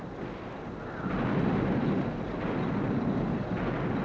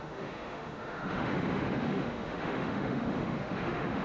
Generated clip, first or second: second